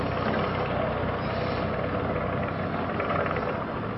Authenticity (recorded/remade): recorded